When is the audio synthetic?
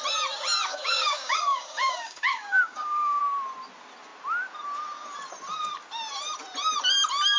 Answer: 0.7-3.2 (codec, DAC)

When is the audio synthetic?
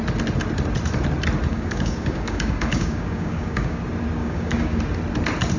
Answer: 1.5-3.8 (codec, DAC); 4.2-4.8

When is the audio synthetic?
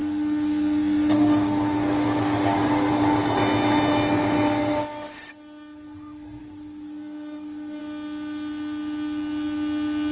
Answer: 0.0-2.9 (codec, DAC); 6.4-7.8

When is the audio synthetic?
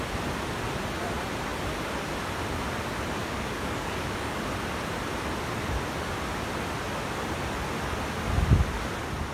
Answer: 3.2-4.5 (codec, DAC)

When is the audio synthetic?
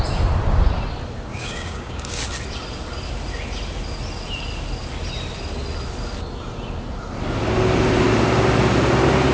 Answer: 1.3-2.2 (codec, DAC)